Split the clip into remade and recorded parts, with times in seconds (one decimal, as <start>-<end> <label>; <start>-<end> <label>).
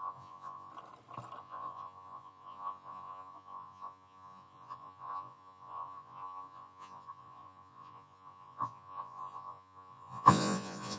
0.0-0.7 remade; 0.7-1.4 recorded; 1.4-11.0 remade